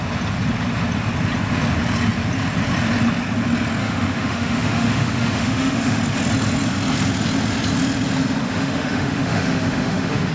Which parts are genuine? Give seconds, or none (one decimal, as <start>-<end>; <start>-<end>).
0.0-3.8; 6.0-8.4